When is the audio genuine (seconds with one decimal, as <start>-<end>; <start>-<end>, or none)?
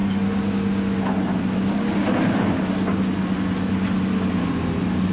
0.0-5.1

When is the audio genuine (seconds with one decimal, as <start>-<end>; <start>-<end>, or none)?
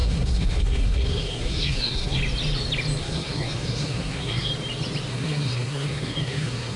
2.2-3.0; 4.5-5.1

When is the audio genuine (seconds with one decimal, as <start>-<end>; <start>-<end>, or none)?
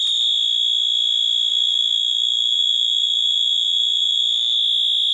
0.0-1.5; 4.2-5.1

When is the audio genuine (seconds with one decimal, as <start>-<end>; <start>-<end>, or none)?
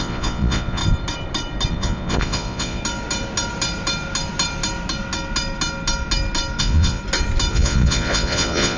0.8-1.7; 2.8-6.6; 7.0-7.5